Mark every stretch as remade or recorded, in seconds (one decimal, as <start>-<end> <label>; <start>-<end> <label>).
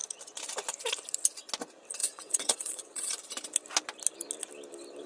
0.0-2.0 recorded; 2.0-3.1 remade; 3.1-5.1 recorded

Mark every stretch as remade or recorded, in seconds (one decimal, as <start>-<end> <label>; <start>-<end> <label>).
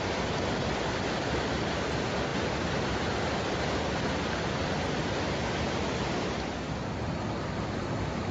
0.0-8.3 recorded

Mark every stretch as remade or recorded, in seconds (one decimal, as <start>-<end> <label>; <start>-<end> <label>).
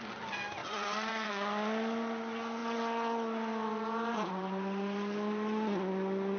0.0-0.6 recorded; 0.6-1.3 remade; 1.3-6.4 recorded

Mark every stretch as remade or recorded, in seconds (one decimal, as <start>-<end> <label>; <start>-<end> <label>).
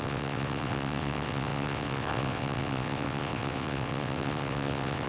0.0-5.1 remade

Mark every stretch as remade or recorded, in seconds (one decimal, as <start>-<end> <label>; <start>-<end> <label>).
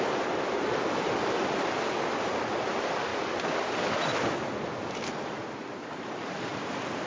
0.0-7.1 recorded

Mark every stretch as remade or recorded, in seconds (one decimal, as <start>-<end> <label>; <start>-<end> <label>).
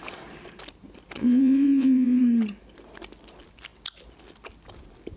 0.0-1.2 recorded; 1.2-2.2 remade; 2.2-5.2 recorded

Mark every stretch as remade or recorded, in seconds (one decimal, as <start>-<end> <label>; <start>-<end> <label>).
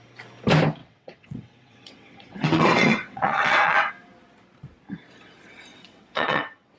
0.0-0.8 recorded; 0.8-3.9 remade; 3.9-5.7 recorded; 5.7-6.8 remade